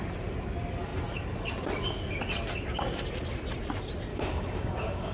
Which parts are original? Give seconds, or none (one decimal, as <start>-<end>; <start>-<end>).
0.0-4.1